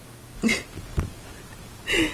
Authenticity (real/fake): real